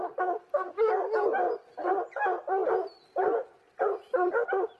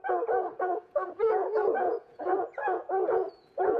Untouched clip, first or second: first